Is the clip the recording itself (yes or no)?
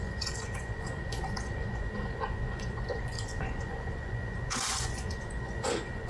no